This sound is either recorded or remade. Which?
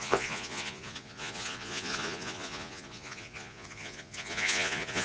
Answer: remade